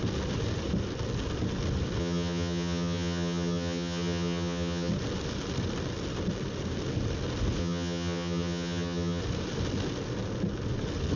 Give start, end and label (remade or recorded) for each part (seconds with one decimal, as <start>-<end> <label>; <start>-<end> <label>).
0.0-2.0 recorded; 2.0-4.9 remade; 4.9-7.6 recorded; 7.6-9.2 remade; 9.2-11.2 recorded